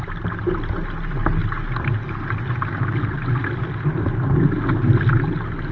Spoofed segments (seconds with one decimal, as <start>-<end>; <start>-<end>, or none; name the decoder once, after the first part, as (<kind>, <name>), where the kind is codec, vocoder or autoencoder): none